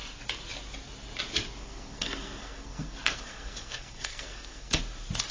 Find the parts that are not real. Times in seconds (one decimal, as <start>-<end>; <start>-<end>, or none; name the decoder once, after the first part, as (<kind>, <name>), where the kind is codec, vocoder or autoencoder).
1.6-4.8 (codec, SNAC)